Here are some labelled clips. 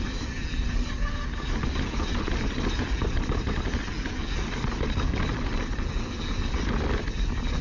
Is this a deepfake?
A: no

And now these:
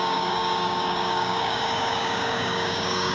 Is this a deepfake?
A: yes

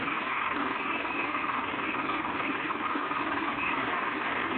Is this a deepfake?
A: yes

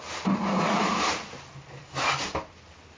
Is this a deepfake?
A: no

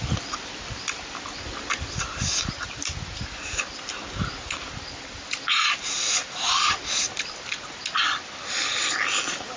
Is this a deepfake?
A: no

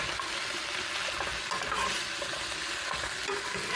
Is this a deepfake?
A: no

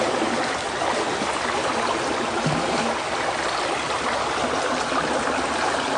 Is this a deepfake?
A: no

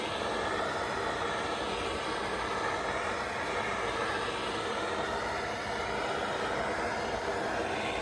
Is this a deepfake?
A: no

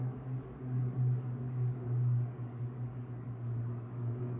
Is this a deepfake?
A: yes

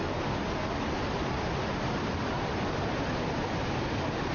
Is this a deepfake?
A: no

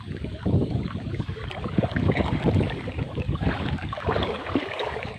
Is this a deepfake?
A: yes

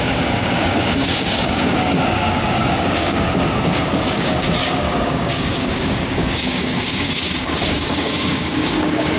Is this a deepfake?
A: yes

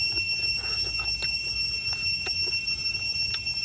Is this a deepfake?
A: no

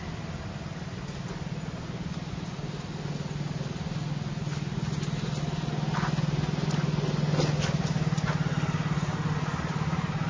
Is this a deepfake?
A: no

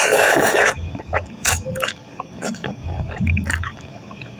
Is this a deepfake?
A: yes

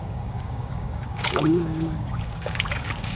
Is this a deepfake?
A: yes